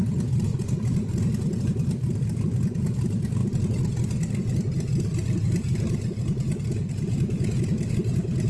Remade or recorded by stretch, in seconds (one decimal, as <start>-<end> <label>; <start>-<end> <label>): 0.0-8.5 recorded